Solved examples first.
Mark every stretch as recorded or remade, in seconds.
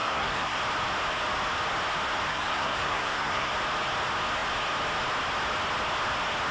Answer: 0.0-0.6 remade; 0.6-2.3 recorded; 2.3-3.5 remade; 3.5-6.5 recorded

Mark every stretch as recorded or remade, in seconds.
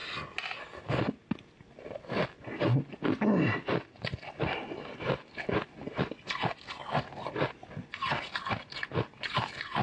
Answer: 0.0-9.8 recorded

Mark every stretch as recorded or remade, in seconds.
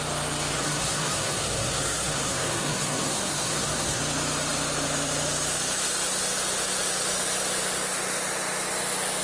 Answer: 0.0-0.5 recorded; 0.5-4.0 remade; 4.0-9.2 recorded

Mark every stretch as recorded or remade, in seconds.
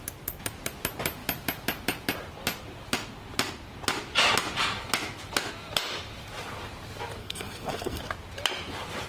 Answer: 0.0-7.2 recorded; 7.2-8.0 remade; 8.0-9.1 recorded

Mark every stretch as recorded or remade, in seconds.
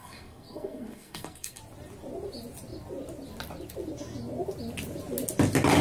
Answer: 0.0-1.6 remade; 1.6-5.8 recorded